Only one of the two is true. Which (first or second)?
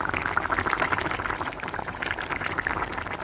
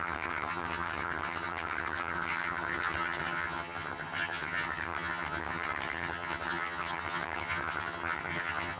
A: first